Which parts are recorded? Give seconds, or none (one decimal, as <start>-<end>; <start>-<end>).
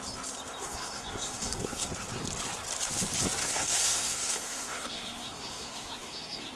0.0-0.6; 1.9-3.4